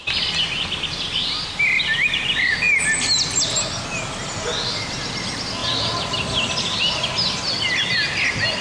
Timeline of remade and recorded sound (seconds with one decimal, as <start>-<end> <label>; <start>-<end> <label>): 0.0-8.6 recorded